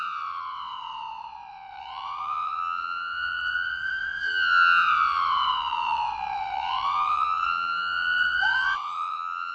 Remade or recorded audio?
remade